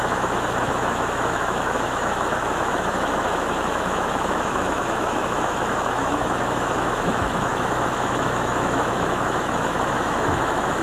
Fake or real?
fake